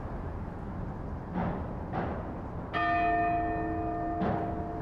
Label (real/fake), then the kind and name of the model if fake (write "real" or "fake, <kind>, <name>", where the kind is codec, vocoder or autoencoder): real